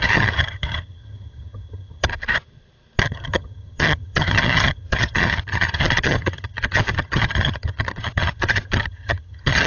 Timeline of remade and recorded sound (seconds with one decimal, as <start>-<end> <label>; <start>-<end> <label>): 0.0-2.1 remade; 2.1-3.0 recorded; 3.0-9.7 remade